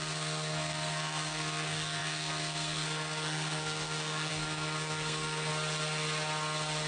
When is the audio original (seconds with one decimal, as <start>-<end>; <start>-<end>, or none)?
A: 5.5-6.9